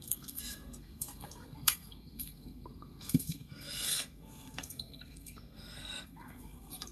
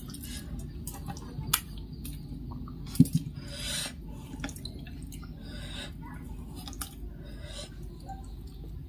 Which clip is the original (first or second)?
second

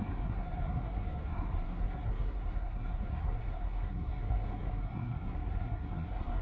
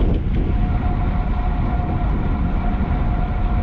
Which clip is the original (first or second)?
second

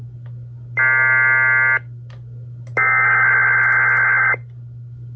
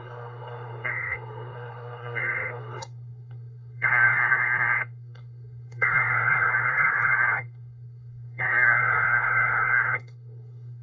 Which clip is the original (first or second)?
first